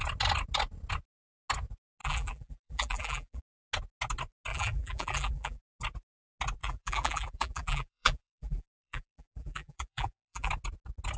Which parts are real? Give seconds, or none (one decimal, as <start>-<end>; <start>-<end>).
0.0-2.0; 3.4-4.5; 5.6-6.6; 10.5-11.2